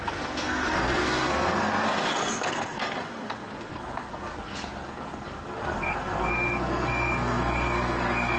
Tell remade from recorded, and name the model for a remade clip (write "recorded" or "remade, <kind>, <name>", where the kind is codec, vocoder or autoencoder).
remade, codec, SNAC